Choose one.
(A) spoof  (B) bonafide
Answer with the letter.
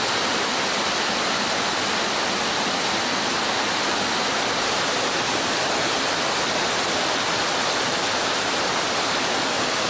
B